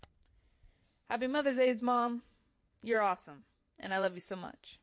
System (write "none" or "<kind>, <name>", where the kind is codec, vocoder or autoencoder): vocoder, WaveNeXt